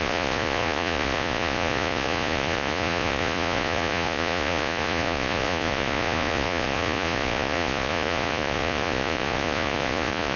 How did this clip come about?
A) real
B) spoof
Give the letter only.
B